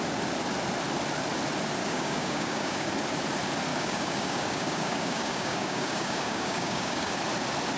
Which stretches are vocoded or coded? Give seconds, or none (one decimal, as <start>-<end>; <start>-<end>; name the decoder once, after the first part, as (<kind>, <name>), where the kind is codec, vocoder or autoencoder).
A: 1.8-2.9 (codec, DAC); 3.7-7.1